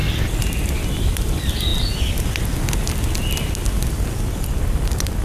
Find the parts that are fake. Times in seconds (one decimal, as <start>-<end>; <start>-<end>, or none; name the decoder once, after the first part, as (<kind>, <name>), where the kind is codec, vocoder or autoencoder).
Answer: none

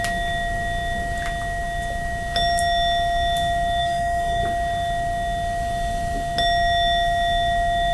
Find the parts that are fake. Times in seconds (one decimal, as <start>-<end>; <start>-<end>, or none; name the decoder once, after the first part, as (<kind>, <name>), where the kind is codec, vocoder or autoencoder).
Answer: 3.8-4.4 (codec, DAC)

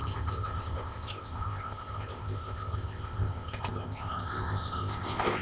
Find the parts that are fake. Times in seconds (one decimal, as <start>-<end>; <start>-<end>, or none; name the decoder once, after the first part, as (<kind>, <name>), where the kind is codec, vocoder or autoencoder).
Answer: 0.0-5.4 (codec, ZipCodec)

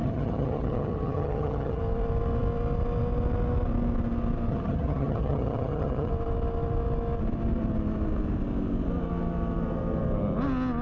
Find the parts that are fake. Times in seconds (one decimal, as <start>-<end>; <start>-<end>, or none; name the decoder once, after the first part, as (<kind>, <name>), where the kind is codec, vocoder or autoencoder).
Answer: 0.0-1.8 (vocoder, HiFi-GAN); 4.5-6.1